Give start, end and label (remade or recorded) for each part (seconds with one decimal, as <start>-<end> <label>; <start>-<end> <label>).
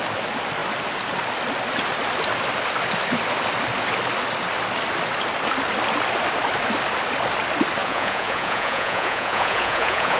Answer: 0.0-7.8 recorded; 7.8-10.2 remade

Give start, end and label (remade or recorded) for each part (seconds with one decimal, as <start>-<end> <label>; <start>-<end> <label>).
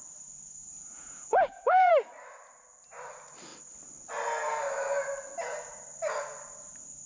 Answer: 0.0-0.6 recorded; 0.6-1.9 remade; 1.9-7.1 recorded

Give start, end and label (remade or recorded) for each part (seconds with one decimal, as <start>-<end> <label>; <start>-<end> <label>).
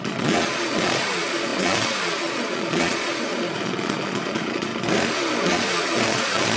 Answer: 0.0-4.7 remade; 4.7-5.4 recorded; 5.4-6.6 remade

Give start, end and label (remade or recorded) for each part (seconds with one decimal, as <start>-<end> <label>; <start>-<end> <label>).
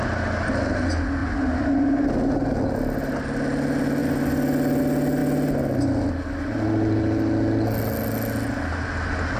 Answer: 0.0-9.4 recorded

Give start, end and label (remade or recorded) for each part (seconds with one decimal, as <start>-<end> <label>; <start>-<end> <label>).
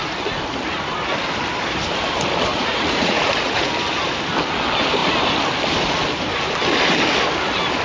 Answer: 0.0-2.5 recorded; 2.5-3.7 remade; 3.7-7.8 recorded